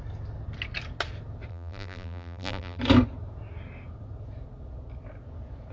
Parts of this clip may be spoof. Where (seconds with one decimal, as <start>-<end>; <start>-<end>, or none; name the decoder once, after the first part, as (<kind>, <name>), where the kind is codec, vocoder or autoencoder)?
1.5-2.8 (vocoder, BigVGAN v2)